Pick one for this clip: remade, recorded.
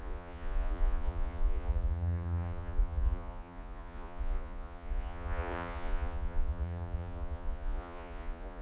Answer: remade